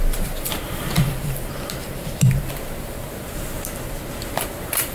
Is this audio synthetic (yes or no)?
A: yes